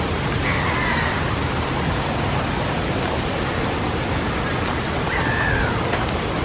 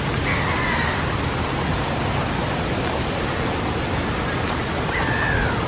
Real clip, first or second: second